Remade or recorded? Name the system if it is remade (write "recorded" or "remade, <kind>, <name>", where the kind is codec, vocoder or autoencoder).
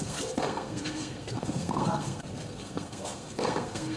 remade, codec, SNAC